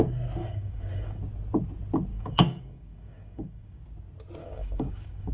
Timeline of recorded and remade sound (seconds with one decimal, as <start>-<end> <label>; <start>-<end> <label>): 0.0-0.4 recorded; 0.4-1.2 remade; 1.2-2.1 recorded; 2.1-3.8 remade; 3.8-4.4 recorded; 4.4-5.3 remade